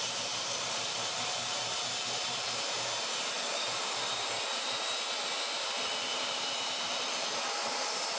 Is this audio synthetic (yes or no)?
yes